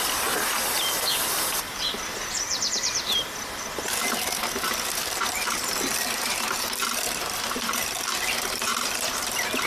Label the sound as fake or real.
fake